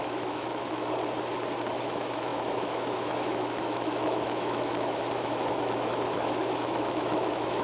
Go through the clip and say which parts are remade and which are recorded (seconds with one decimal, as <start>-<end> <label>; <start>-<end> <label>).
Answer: 0.0-0.8 remade; 0.8-1.8 recorded; 1.8-7.6 remade